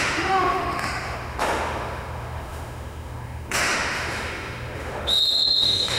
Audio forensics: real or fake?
fake